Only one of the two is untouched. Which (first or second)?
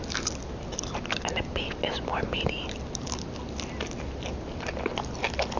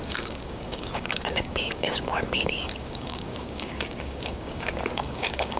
first